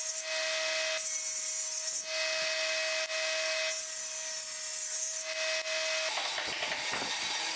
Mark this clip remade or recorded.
recorded